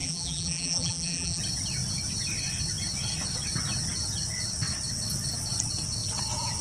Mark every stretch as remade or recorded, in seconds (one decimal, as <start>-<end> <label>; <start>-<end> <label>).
0.0-1.4 remade; 1.4-6.6 recorded